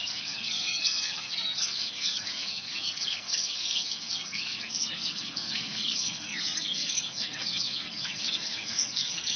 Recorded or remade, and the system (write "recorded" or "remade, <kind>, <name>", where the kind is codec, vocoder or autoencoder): remade, codec, SNAC